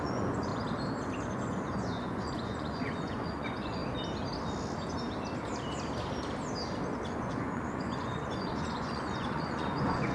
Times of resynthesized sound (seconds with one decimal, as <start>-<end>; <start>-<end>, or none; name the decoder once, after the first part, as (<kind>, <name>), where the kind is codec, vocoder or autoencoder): 0.0-0.5 (vocoder, Vocos); 1.3-3.8; 7.1-10.1